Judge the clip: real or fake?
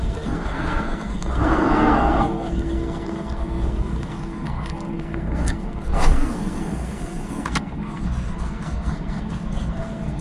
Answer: fake